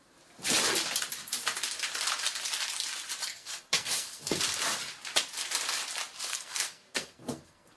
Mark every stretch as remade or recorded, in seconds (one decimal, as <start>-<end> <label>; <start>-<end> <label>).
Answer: 0.0-3.3 recorded; 3.3-4.4 remade; 4.4-6.3 recorded; 6.3-7.8 remade